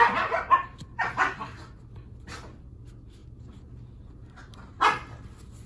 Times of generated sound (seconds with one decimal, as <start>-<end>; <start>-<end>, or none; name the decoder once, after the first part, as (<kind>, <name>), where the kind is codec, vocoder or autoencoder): none